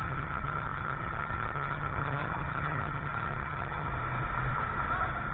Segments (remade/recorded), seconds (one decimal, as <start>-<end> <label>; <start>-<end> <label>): 0.0-3.9 remade; 3.9-5.3 recorded